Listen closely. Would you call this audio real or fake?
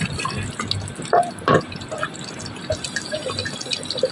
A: real